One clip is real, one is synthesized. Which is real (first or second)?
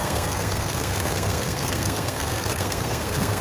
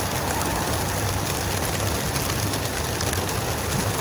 second